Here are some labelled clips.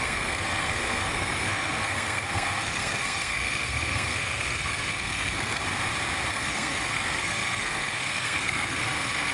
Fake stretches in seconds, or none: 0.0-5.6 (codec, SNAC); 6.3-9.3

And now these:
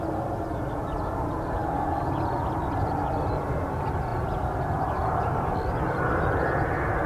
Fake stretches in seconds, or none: none

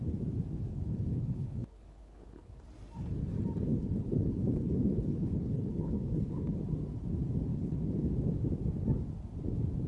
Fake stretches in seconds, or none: 0.7-2.6 (codec, HILCodec); 3.7-6.6; 7.5-8.1

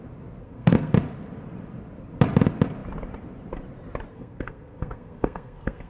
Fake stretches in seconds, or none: 0.4-0.9 (codec, SNAC); 4.1-5.9

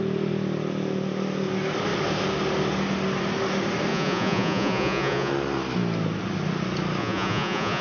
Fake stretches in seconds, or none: 3.9-5.3 (vocoder, Vocos); 7.0-7.8

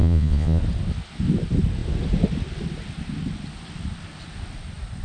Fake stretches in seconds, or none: 0.0-0.6 (vocoder, Vocos)

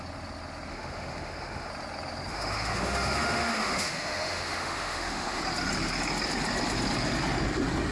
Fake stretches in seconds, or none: 0.7-1.7 (autoencoder, DAC-VAE); 2.3-5.4